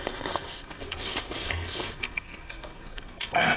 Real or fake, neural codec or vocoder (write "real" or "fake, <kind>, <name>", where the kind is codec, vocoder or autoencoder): fake, codec, SNAC